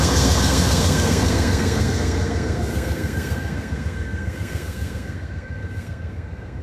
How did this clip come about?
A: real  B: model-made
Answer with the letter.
B